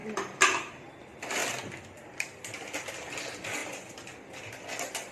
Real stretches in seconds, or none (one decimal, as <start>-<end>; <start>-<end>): 0.9-1.4; 2.4-3.6; 4.1-5.1